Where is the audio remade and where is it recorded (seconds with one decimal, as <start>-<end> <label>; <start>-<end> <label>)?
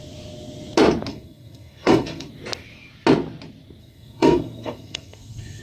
0.0-1.1 recorded; 1.1-2.3 remade; 2.3-3.8 recorded; 3.8-5.6 remade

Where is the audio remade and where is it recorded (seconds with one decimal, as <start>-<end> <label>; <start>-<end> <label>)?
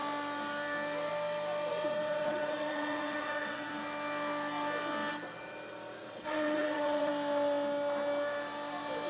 0.0-1.7 recorded; 1.7-3.7 remade; 3.7-6.0 recorded; 6.0-7.1 remade; 7.1-9.1 recorded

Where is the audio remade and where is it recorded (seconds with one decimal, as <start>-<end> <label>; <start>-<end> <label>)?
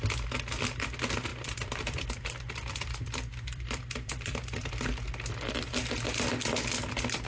0.0-1.3 recorded; 1.3-4.7 remade; 4.7-7.3 recorded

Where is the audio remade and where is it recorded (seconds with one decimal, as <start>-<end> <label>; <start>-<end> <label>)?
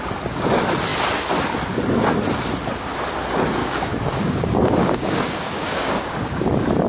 0.0-3.6 recorded; 3.6-6.5 remade; 6.5-6.9 recorded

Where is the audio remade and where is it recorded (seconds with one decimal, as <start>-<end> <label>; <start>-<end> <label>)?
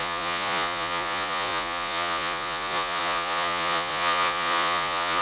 0.0-5.2 remade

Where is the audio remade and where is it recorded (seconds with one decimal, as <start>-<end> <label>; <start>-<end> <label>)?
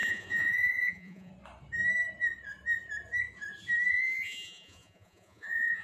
0.0-1.3 remade; 1.3-3.9 recorded; 3.9-5.8 remade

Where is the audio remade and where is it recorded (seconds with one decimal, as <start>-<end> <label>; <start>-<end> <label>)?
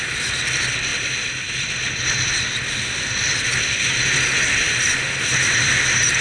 0.0-6.2 recorded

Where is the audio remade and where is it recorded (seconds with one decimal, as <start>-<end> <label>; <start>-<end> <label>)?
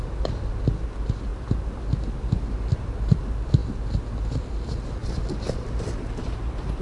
0.0-6.8 recorded